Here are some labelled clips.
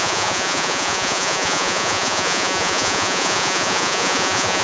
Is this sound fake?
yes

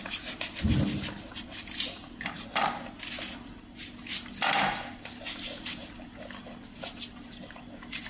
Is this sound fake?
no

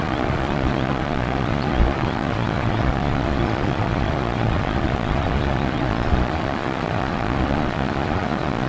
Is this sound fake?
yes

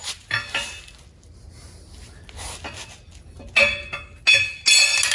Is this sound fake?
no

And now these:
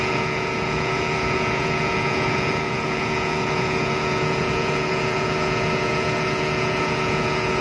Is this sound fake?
yes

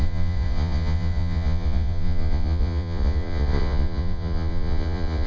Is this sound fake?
yes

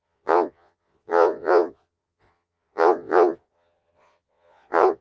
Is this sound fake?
yes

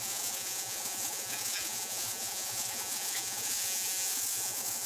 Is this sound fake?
yes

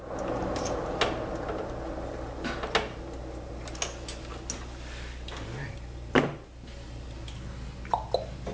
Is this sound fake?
no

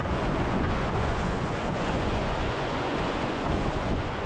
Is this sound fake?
yes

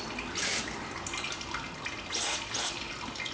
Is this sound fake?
no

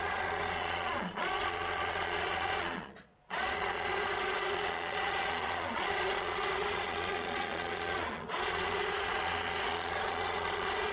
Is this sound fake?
yes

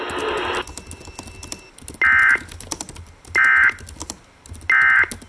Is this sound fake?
no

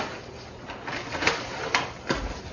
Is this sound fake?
no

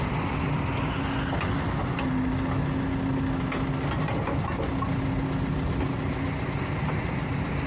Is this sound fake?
no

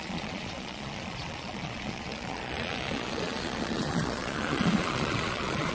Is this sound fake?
yes